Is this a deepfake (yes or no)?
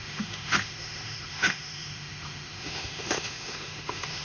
yes